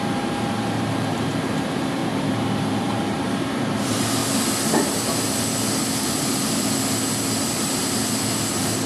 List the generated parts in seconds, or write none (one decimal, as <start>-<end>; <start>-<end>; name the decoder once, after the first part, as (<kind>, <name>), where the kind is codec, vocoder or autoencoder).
0.0-2.0 (vocoder, BigVGAN v2); 2.6-4.2; 7.4-8.0; 8.5-8.9